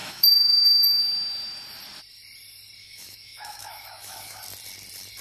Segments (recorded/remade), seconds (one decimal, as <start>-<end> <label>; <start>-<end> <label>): 0.0-1.0 remade; 1.0-2.8 recorded; 2.8-4.4 remade; 4.4-5.2 recorded